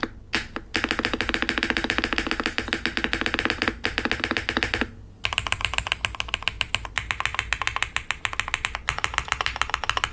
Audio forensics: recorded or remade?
recorded